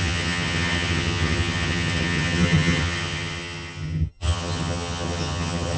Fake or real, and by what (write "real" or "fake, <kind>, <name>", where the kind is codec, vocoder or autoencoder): fake, vocoder, HiFi-GAN